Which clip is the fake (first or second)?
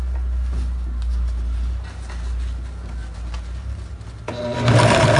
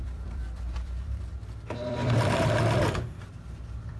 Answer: second